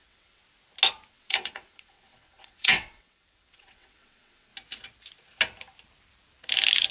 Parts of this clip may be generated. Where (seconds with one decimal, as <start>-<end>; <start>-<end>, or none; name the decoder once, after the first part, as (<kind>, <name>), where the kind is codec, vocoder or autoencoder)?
0.0-0.4 (vocoder, WaveNeXt); 1.1-4.5